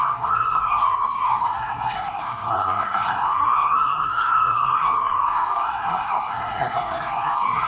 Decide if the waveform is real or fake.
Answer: fake